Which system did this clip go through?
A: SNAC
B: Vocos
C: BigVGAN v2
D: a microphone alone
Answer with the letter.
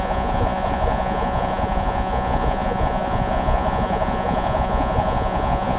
B